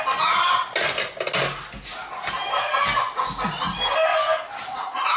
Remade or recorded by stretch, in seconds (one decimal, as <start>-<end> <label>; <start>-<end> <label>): 0.0-5.2 recorded